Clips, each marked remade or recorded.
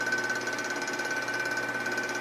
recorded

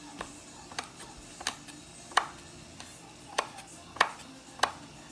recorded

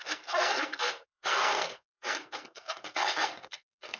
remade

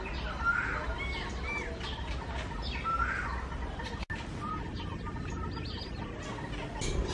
recorded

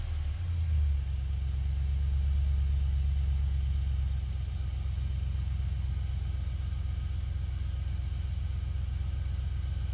recorded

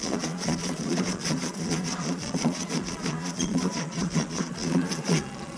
remade